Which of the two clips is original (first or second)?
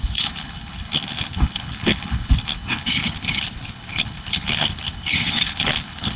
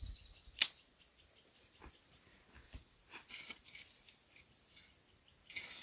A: second